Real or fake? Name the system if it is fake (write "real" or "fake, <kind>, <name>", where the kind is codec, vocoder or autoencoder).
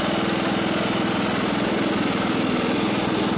real